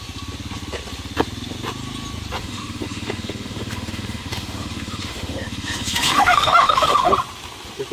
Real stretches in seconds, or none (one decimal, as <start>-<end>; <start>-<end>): 0.0-2.4; 7.1-7.9